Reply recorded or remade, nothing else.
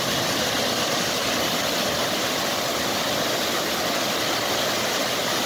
recorded